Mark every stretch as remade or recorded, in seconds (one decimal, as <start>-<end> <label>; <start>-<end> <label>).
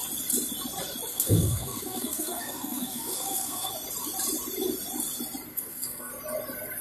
0.0-1.1 recorded; 1.1-3.7 remade; 3.7-5.5 recorded; 5.5-6.1 remade; 6.1-6.8 recorded